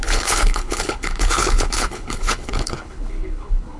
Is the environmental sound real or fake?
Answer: fake